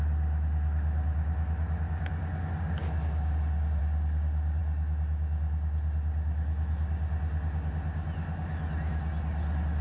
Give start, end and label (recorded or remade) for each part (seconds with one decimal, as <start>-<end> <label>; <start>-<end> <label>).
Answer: 0.0-9.8 recorded